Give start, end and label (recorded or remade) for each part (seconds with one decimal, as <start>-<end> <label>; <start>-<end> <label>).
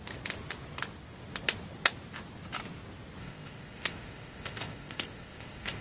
0.0-3.2 recorded; 3.2-5.8 remade